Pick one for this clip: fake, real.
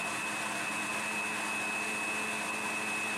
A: real